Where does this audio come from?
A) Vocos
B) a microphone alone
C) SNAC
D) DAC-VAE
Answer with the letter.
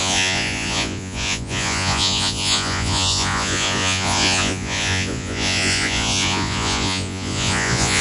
A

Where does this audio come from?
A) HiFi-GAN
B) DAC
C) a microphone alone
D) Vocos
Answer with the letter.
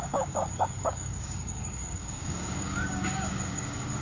B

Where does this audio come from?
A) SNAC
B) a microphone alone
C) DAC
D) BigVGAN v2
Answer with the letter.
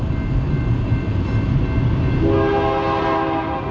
B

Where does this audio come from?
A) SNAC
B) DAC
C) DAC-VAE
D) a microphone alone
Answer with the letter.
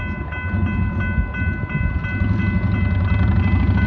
D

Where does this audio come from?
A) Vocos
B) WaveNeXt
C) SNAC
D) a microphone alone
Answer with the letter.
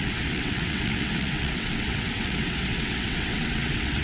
B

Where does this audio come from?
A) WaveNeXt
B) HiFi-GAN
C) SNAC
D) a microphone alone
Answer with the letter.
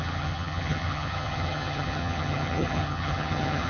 B